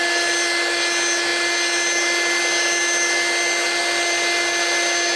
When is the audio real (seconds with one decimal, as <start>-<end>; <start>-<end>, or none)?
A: 0.0-5.2